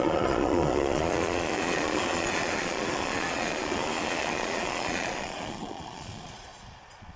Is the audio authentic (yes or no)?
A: no